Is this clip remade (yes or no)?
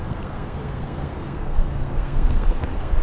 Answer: yes